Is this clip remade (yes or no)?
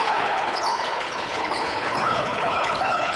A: yes